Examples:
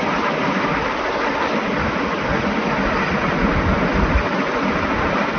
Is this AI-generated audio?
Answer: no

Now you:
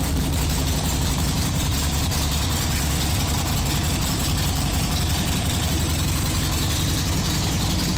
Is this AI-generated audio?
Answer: yes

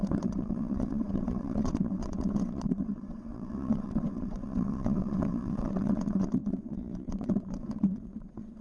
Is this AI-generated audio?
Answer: yes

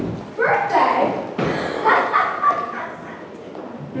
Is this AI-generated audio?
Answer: no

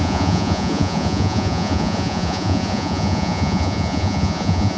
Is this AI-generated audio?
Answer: yes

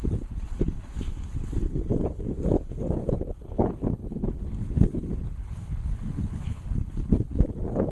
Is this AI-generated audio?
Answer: yes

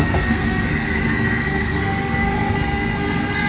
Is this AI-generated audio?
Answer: yes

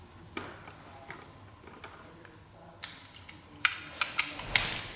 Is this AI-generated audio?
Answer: no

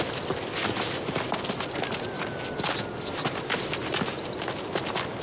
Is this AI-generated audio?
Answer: no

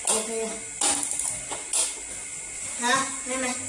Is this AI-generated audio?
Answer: no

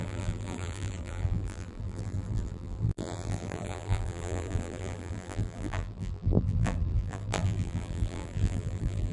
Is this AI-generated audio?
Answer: yes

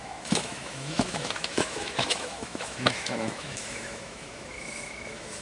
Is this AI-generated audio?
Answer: yes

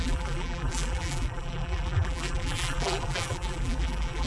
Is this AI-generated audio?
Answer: yes